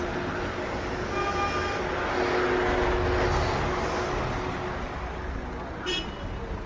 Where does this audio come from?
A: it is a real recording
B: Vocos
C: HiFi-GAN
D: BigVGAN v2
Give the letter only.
A